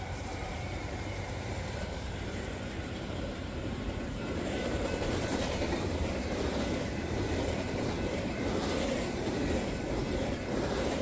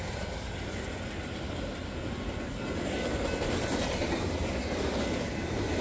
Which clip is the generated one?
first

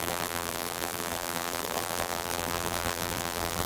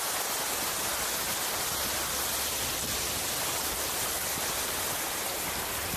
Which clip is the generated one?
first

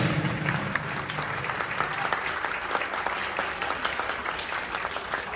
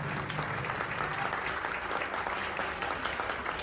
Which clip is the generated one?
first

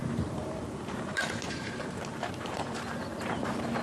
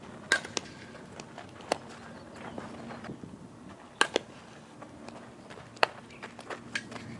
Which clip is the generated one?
first